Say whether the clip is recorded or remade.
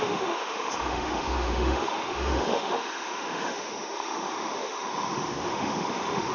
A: remade